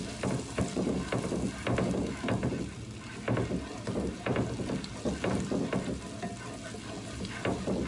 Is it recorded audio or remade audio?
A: recorded